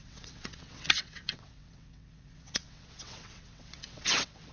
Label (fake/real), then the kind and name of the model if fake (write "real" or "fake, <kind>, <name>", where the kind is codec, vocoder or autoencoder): fake, vocoder, WaveNeXt